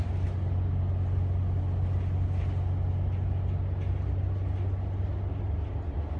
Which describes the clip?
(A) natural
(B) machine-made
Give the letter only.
A